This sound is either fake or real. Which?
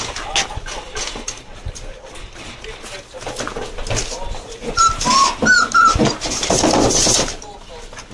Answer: real